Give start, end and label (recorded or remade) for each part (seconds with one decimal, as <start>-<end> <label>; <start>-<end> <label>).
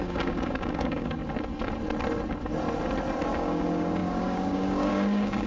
0.0-1.2 remade; 1.2-3.3 recorded; 3.3-5.5 remade